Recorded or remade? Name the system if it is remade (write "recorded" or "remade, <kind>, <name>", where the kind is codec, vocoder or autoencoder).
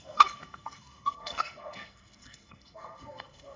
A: remade, codec, SNAC